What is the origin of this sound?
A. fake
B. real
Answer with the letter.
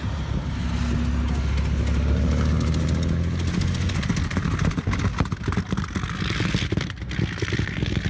B